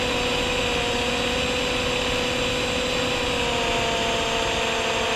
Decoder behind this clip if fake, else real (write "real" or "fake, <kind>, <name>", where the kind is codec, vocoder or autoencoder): real